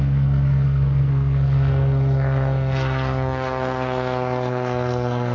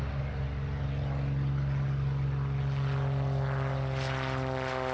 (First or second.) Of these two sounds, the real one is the second